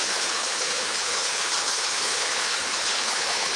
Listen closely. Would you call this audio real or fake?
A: fake